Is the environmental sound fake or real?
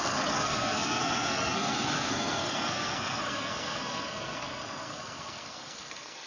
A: fake